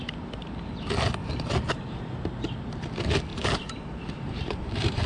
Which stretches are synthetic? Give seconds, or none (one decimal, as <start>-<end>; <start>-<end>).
1.2-1.7; 3.3-5.1